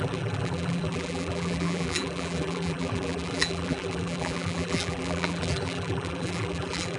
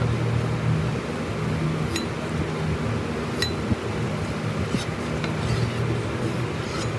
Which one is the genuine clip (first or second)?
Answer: second